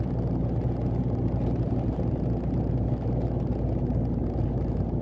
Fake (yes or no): no